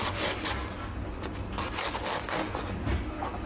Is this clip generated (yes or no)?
no